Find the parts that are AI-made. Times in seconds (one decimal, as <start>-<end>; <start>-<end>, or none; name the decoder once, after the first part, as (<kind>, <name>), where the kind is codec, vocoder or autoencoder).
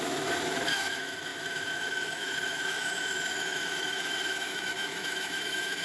0.0-5.8 (autoencoder, DAC-VAE)